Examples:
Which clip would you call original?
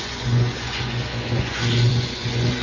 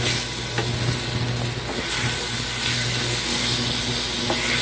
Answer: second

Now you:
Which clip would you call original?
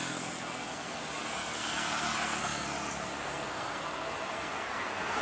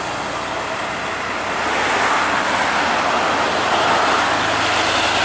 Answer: second